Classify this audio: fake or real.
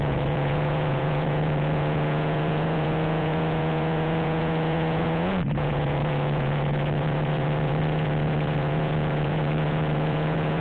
fake